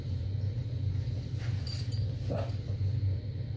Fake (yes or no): no